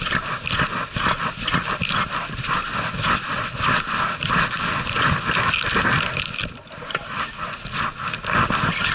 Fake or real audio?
real